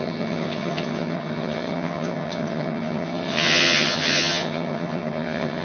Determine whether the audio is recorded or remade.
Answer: remade